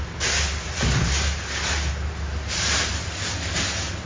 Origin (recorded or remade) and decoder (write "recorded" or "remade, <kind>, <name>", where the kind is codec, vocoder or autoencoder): recorded